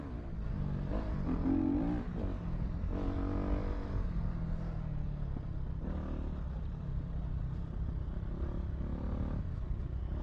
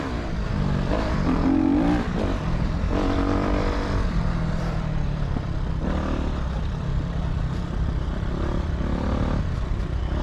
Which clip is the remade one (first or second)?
second